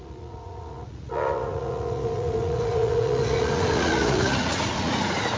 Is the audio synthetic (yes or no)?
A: yes